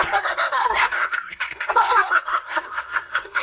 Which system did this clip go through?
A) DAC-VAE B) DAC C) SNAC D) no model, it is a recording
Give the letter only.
C